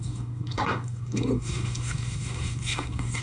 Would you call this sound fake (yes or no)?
yes